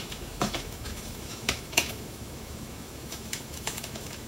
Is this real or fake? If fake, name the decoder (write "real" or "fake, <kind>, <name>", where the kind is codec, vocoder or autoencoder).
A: fake, autoencoder, DAC-VAE